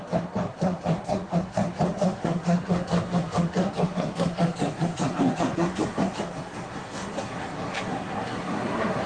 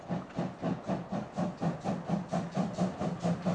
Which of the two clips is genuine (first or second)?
second